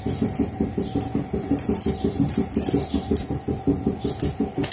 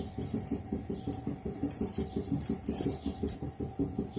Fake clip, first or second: second